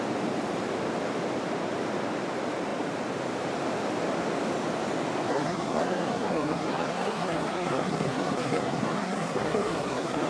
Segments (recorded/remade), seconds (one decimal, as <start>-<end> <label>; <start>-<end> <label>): 0.0-5.3 recorded; 5.3-10.3 remade